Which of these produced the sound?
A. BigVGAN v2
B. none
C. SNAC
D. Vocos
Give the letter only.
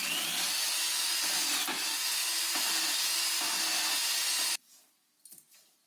B